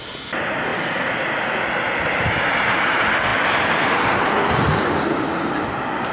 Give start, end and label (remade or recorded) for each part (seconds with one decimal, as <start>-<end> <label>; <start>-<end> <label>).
0.0-6.1 recorded